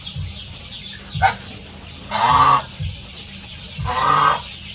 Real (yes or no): yes